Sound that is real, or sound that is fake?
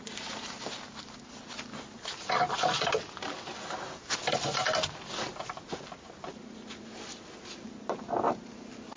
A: real